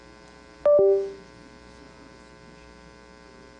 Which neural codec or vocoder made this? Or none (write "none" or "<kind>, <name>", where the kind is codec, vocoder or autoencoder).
none